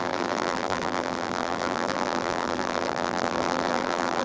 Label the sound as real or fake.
fake